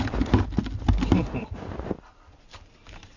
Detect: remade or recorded remade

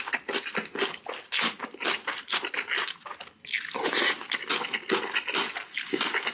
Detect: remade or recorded recorded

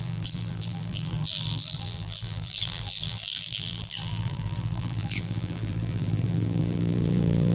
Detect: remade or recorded remade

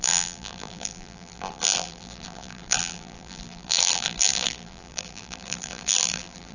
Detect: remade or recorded remade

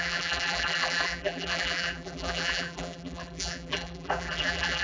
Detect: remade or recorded remade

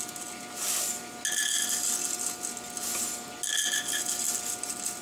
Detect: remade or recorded recorded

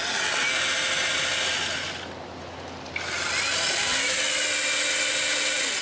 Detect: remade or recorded recorded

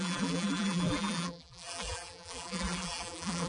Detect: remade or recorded remade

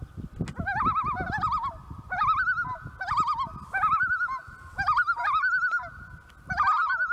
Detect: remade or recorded recorded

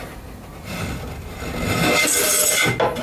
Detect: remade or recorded recorded